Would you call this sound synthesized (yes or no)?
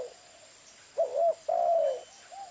no